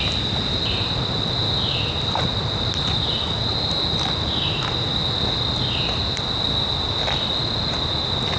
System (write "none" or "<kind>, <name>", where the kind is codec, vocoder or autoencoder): none